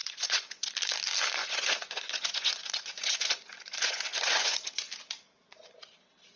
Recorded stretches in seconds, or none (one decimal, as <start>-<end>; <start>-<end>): 0.7-1.4; 4.9-6.4